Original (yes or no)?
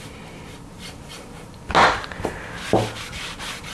yes